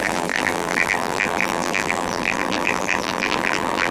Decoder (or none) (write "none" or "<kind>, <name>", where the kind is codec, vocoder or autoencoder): vocoder, BigVGAN v2